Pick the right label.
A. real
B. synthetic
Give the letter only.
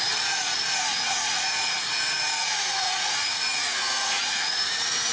B